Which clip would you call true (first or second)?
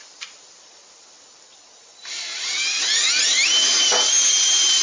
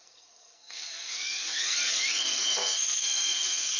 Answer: first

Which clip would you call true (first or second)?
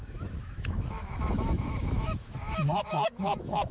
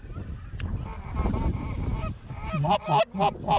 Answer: second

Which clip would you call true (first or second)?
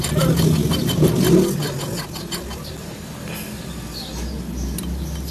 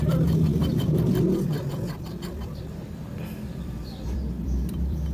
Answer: first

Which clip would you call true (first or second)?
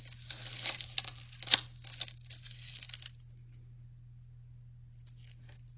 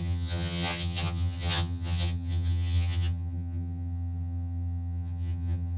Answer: first